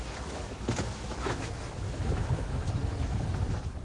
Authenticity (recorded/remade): remade